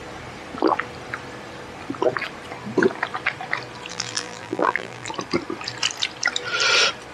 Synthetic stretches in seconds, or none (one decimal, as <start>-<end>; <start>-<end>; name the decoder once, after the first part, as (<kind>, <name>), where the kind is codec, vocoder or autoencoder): 3.9-5.1 (vocoder, BigVGAN v2)